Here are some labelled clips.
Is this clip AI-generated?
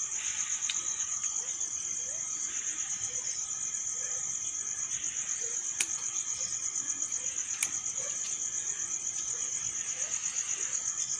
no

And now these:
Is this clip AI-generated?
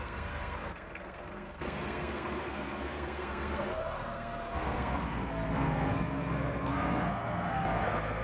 yes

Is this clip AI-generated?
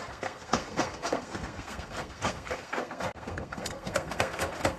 yes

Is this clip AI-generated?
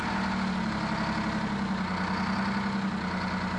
no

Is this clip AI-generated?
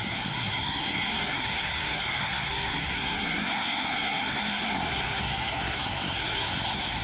yes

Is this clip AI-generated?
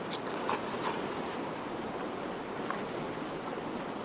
no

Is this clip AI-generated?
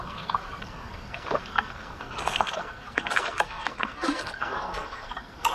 yes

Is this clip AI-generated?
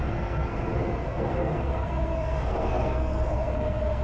yes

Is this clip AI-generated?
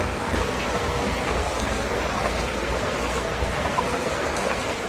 yes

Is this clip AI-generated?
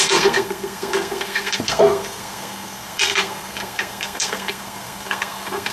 yes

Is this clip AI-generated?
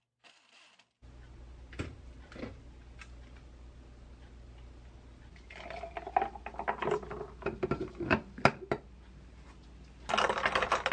no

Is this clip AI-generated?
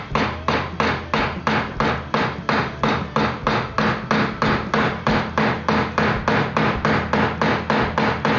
no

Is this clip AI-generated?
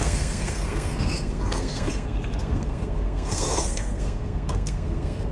yes